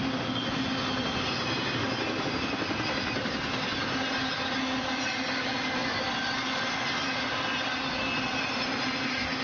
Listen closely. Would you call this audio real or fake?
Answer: real